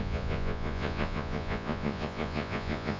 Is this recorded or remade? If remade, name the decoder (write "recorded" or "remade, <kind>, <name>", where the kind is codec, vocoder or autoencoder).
remade, vocoder, Vocos